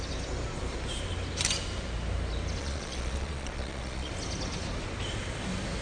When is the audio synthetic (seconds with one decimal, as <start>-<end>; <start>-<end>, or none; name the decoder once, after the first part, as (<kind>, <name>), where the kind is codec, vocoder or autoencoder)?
2.6-4.1 (vocoder, Vocos)